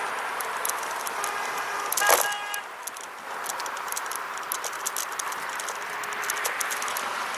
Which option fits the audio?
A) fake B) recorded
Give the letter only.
B